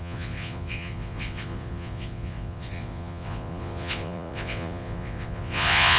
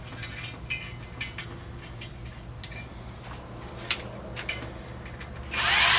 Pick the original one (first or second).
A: second